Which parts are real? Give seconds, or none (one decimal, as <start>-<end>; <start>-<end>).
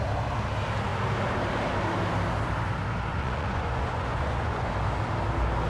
0.0-3.1; 4.7-5.7